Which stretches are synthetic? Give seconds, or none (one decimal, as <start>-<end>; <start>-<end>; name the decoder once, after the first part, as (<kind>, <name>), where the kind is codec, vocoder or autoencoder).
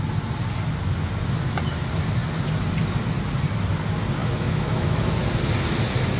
4.2-5.0 (autoencoder, DAC-VAE)